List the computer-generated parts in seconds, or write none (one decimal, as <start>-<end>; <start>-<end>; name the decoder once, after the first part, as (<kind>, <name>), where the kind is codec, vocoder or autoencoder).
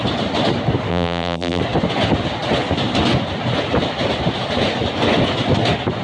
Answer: 0.9-1.6 (vocoder, BigVGAN v2)